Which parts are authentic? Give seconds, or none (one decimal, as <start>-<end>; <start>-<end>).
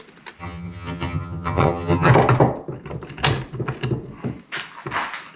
0.0-0.4; 2.1-5.4